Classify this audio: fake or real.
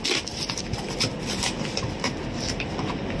real